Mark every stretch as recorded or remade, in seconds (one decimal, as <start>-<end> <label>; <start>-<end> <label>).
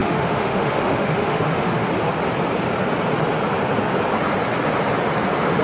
0.0-1.9 remade; 1.9-5.6 recorded